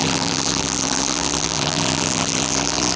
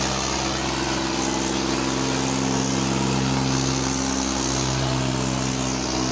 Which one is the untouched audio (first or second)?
second